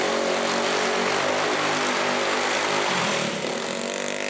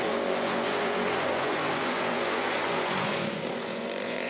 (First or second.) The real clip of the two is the first